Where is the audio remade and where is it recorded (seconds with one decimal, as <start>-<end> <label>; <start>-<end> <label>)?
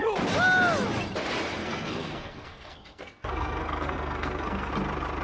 0.0-1.6 recorded; 1.6-4.7 remade; 4.7-5.2 recorded